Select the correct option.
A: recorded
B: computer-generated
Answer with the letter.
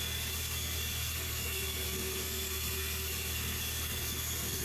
B